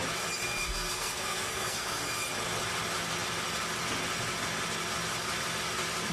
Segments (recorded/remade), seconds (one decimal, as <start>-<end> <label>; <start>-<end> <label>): 0.0-0.6 recorded; 0.6-2.0 remade; 2.0-6.1 recorded